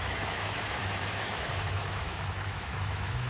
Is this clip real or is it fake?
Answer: fake